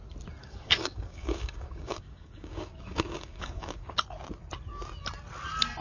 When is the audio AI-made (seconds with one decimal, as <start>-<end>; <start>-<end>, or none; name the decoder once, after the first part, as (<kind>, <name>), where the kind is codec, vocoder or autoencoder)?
0.4-3.9 (codec, DAC)